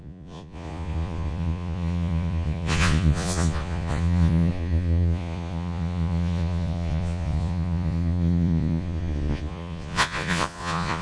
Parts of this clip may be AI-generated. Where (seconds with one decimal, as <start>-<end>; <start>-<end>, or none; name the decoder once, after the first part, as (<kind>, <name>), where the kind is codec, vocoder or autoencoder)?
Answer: 0.0-11.0 (vocoder, Vocos)